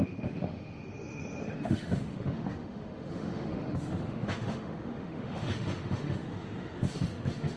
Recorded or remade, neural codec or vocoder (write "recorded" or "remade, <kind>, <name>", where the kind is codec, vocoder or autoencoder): remade, autoencoder, DAC-VAE